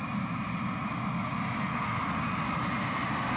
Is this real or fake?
real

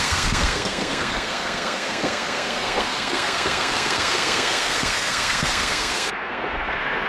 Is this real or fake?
fake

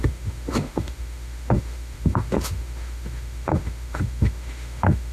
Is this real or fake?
fake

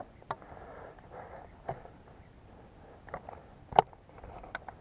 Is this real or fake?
real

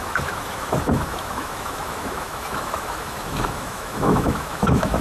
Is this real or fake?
fake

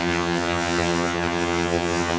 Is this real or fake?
fake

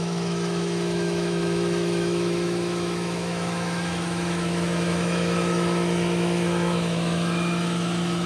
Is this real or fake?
fake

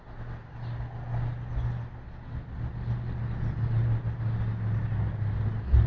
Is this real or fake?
real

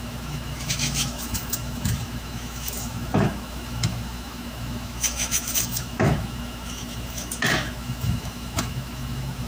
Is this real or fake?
fake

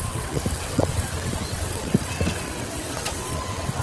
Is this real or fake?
fake